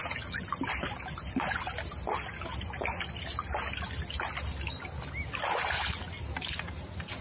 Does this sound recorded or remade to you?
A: recorded